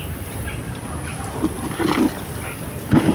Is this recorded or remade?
recorded